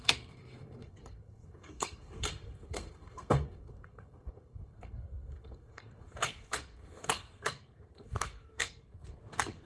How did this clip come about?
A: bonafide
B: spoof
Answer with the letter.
B